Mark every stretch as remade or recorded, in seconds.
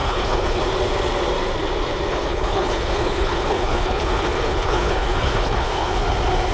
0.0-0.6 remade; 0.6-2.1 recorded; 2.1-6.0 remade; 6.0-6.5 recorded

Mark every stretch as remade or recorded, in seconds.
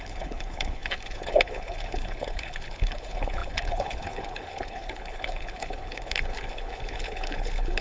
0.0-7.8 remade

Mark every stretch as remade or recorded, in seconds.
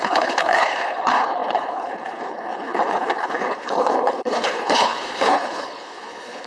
0.0-6.5 remade